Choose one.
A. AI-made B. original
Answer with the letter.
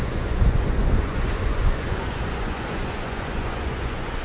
A